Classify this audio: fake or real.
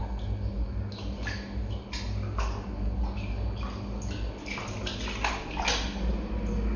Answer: real